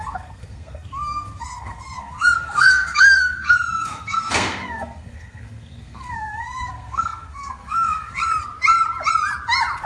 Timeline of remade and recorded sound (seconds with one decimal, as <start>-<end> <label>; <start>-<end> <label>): 0.0-8.2 remade; 8.2-9.9 recorded